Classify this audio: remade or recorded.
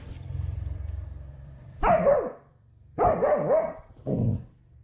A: remade